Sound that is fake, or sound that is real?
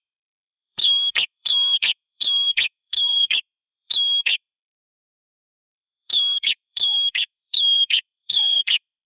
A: fake